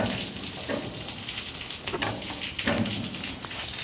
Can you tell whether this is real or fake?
real